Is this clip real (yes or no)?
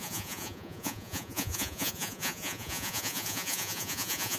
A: no